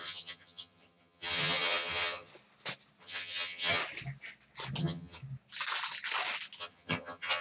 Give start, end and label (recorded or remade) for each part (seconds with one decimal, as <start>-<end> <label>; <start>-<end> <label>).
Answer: 0.0-2.3 remade; 2.3-3.0 recorded; 3.0-3.8 remade; 3.8-4.8 recorded; 4.8-5.2 remade; 5.2-6.6 recorded; 6.6-7.4 remade